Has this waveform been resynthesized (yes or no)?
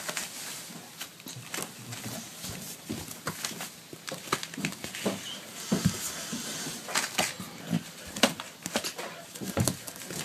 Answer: no